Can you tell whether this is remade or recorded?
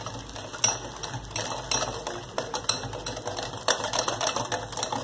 recorded